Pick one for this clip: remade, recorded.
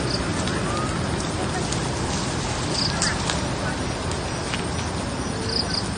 recorded